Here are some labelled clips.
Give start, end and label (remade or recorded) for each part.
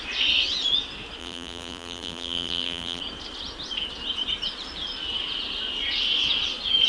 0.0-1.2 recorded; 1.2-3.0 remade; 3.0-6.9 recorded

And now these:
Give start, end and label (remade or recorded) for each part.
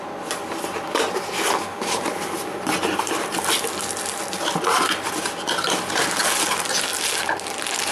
0.0-7.9 recorded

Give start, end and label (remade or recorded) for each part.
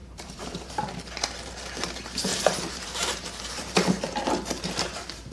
0.0-0.7 remade; 0.7-2.3 recorded; 2.3-5.3 remade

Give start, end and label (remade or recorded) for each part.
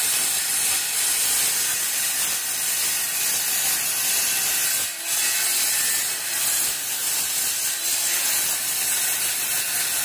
0.0-10.0 recorded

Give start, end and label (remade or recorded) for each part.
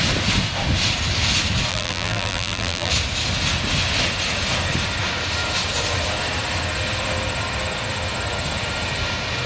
0.0-1.7 recorded; 1.7-2.9 remade; 2.9-9.5 recorded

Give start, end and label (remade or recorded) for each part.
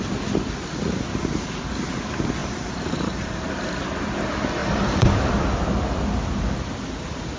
0.0-2.4 recorded; 2.4-3.4 remade; 3.4-4.6 recorded; 4.6-5.3 remade; 5.3-7.4 recorded